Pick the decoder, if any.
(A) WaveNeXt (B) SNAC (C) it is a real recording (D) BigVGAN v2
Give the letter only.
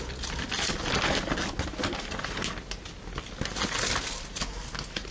C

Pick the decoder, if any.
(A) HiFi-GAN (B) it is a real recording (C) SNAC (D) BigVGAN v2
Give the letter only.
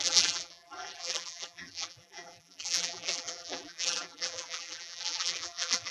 D